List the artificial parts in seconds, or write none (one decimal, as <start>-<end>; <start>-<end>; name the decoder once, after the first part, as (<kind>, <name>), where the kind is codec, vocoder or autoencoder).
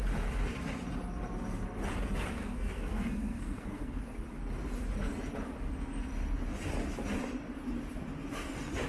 2.4-4.0 (codec, SNAC)